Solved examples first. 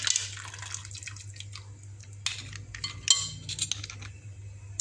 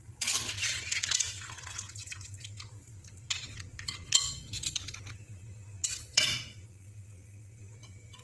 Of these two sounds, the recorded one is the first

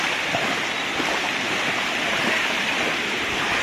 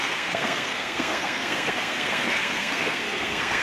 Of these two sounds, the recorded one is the first